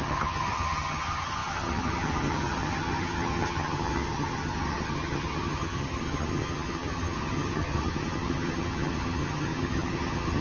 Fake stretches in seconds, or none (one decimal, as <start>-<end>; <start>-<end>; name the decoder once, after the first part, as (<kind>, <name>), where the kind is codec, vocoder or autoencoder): 0.0-10.4 (vocoder, HiFi-GAN)